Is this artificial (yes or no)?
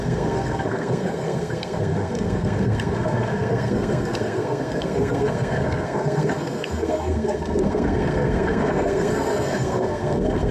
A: yes